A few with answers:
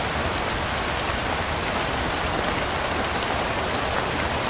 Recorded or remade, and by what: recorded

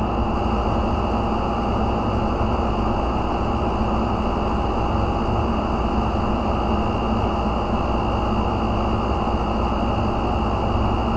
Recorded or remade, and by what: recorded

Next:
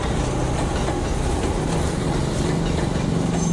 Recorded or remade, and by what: recorded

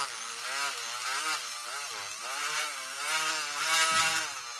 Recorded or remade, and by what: recorded